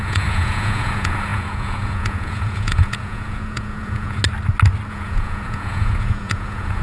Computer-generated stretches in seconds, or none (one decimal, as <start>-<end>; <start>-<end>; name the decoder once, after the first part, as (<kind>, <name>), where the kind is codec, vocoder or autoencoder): 0.0-4.2 (vocoder, Vocos); 4.9-6.8